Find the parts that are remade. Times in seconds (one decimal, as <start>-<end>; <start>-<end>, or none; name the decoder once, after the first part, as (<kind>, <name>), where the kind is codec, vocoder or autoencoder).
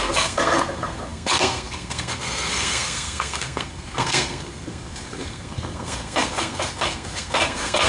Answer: 0.0-7.9 (codec, SNAC)